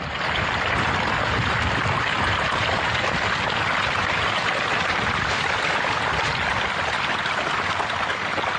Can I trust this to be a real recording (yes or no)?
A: yes